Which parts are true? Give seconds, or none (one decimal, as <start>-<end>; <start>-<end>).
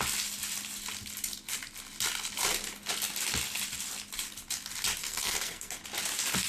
0.0-5.0; 5.8-6.5